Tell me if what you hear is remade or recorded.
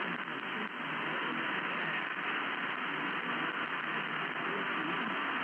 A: recorded